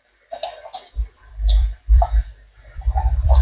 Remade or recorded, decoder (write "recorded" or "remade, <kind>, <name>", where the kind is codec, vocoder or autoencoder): remade, vocoder, BigVGAN v2